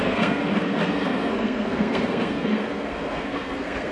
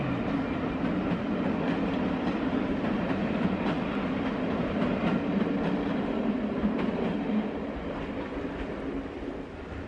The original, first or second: second